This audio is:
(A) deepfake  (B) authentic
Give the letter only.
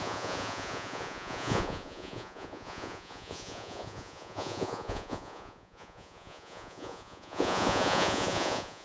A